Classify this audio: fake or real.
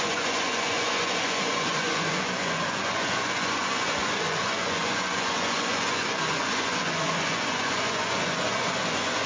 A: fake